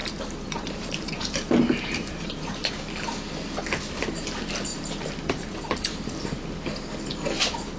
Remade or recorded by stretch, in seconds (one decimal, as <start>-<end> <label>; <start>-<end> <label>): 0.0-2.7 remade; 2.7-4.7 recorded; 4.7-5.9 remade; 5.9-7.8 recorded